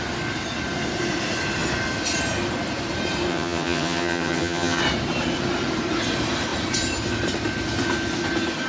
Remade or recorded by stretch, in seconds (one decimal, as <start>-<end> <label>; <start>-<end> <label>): 0.0-3.3 recorded; 3.3-4.8 remade; 4.8-8.7 recorded